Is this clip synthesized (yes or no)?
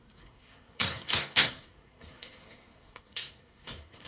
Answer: yes